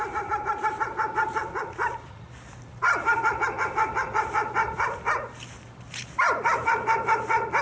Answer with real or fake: real